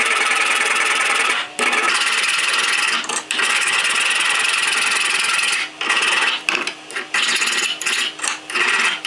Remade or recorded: recorded